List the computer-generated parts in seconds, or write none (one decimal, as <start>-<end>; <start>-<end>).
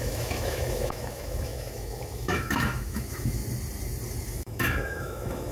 0.0-3.4; 4.3-5.5